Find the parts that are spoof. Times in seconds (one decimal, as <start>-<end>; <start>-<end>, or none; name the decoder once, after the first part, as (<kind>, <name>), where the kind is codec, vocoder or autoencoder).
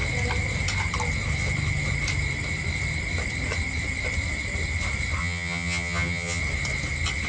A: 5.2-6.4 (vocoder, HiFi-GAN)